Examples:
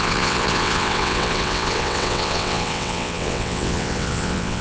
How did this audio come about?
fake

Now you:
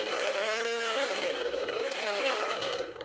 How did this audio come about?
fake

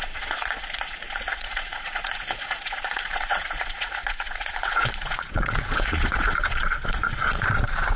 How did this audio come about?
fake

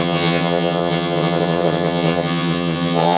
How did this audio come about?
fake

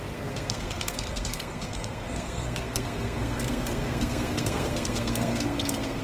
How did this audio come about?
fake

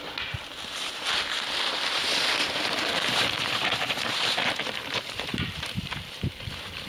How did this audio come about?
fake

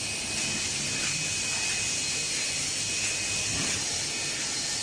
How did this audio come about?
real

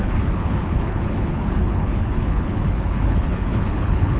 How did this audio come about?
fake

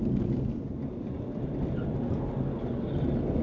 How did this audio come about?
real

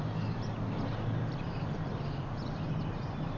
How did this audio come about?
real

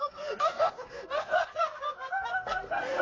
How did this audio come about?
fake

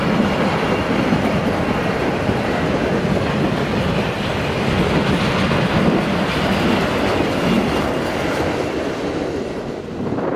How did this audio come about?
real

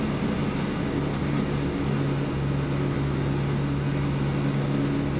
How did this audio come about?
real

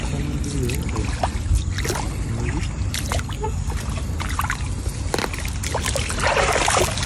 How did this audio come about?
real